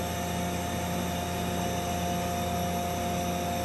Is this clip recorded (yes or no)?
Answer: yes